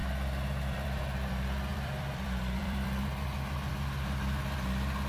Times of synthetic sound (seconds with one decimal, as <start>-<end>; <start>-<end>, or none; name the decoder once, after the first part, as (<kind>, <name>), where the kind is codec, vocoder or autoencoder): 0.6-5.1 (vocoder, BigVGAN v2)